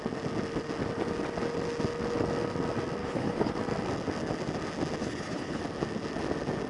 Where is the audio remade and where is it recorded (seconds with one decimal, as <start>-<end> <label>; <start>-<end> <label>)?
0.0-3.0 recorded; 3.0-3.6 remade; 3.6-5.0 recorded; 5.0-5.6 remade; 5.6-6.7 recorded

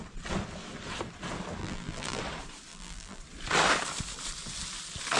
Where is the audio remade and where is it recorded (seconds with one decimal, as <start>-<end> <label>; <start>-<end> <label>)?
0.0-1.6 recorded; 1.6-2.2 remade; 2.2-2.7 recorded; 2.7-3.2 remade; 3.2-5.2 recorded

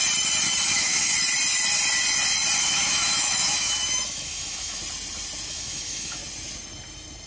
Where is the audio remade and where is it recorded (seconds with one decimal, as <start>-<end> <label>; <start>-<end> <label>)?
0.0-0.7 recorded; 0.7-1.1 remade; 1.1-2.6 recorded; 2.6-4.8 remade; 4.8-5.5 recorded; 5.5-6.2 remade; 6.2-7.3 recorded

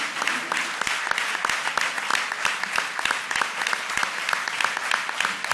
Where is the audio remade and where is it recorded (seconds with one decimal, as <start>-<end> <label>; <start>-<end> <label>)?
0.0-5.5 recorded

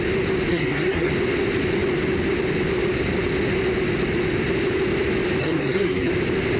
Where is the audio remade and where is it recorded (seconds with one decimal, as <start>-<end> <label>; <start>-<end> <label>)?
0.0-0.5 recorded; 0.5-1.1 remade; 1.1-5.4 recorded; 5.4-6.1 remade; 6.1-6.6 recorded